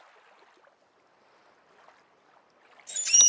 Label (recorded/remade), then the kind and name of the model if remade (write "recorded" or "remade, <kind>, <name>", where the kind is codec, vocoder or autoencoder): recorded